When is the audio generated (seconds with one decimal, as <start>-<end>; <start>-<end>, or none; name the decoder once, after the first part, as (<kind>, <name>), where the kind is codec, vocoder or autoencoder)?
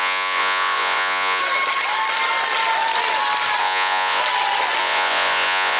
0.0-1.4 (vocoder, Vocos); 3.6-4.2; 4.8-5.8